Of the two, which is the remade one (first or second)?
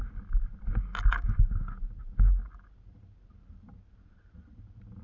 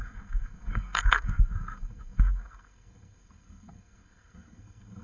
second